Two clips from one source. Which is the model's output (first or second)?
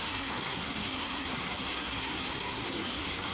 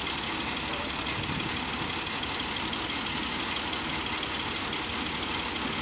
first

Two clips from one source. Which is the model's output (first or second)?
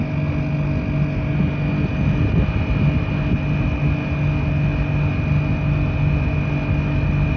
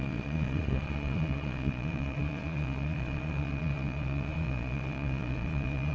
second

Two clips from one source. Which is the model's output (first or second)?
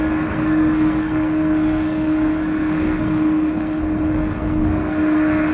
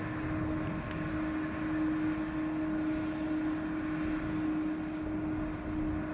first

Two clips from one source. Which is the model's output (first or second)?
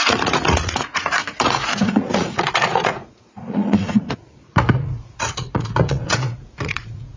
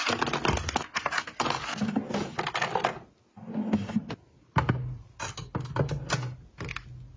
first